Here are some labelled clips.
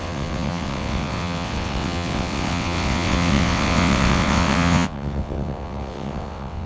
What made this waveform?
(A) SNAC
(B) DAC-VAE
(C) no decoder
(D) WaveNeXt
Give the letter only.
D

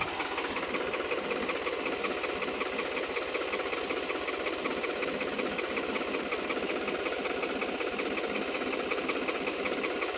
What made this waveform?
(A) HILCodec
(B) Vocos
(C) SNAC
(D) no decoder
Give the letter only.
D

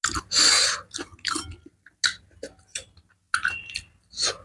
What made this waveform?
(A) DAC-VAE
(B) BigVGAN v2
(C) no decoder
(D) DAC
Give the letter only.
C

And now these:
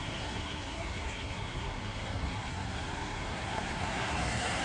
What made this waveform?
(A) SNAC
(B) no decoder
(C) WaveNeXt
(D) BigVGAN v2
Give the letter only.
A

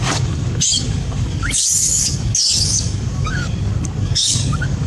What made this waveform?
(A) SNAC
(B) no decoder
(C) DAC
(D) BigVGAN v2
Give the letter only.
C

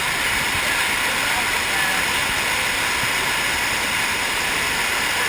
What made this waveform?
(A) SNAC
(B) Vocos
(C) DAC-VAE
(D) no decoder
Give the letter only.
D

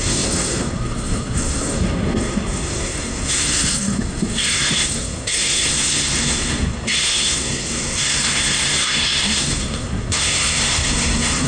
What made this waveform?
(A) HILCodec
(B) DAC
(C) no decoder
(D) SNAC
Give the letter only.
D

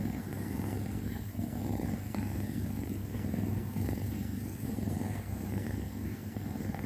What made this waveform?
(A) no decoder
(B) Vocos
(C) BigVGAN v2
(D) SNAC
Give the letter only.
D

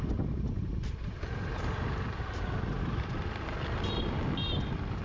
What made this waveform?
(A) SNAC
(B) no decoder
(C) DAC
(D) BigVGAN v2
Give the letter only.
D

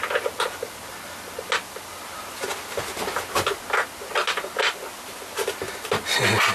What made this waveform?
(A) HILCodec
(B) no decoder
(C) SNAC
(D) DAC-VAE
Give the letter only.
B